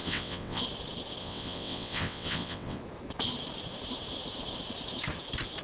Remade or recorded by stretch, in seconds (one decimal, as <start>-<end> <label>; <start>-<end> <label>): 0.0-0.6 remade; 0.6-1.2 recorded; 1.2-2.8 remade; 2.8-5.6 recorded